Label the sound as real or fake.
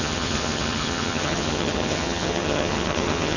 fake